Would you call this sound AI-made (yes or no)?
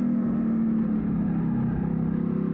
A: no